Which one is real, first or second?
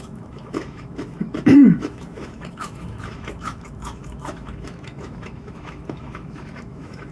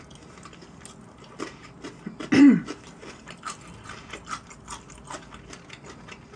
second